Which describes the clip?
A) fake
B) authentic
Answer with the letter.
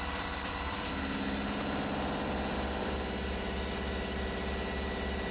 A